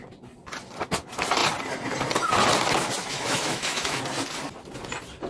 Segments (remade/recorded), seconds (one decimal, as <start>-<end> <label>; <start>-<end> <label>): 0.0-3.1 recorded; 3.1-4.0 remade; 4.0-5.3 recorded